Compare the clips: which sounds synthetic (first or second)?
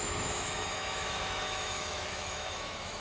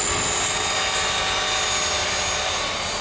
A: first